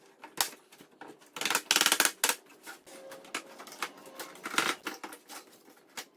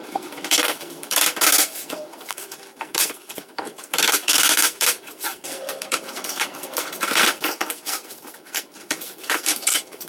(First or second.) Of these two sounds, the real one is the first